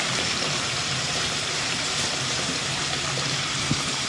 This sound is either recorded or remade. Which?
remade